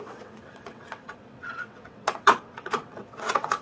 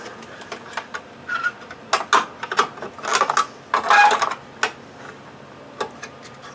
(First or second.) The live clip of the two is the second